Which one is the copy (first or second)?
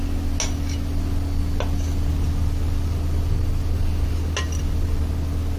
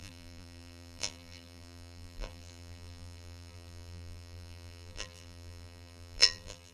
second